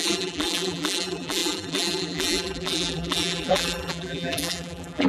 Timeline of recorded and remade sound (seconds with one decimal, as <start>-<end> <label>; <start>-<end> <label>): 0.0-5.1 remade